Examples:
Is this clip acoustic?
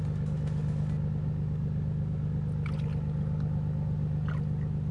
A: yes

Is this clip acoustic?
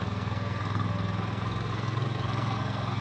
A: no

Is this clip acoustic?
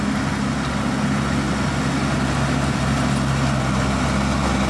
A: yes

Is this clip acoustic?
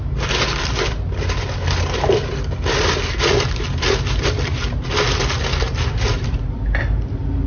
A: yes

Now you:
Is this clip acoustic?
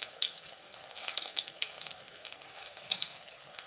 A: no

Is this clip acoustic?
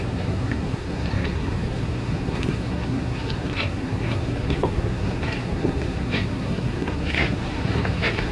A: no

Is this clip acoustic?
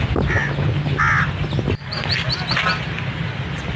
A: yes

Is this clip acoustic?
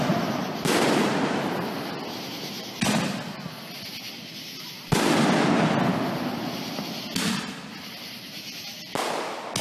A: yes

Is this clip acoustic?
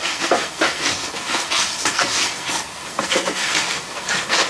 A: no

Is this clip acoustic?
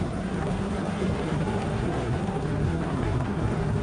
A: no